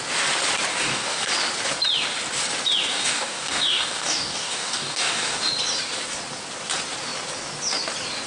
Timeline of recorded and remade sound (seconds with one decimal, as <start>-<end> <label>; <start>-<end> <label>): 0.0-0.7 recorded; 0.7-1.3 remade; 1.3-2.9 recorded; 2.9-5.5 remade; 5.5-8.3 recorded